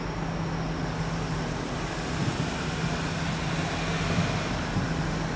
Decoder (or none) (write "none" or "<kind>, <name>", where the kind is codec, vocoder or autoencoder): none